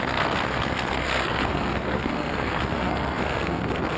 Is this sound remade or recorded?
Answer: remade